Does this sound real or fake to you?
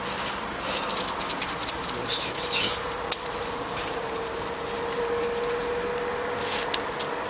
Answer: real